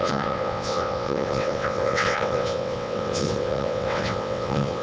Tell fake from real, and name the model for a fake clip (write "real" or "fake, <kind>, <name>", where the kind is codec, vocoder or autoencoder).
fake, vocoder, WaveNeXt